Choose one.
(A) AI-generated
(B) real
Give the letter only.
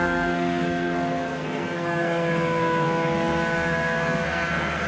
A